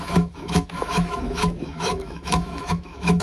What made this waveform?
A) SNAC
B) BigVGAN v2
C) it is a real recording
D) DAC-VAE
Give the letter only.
D